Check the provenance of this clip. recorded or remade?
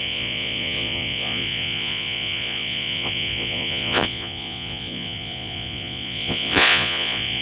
remade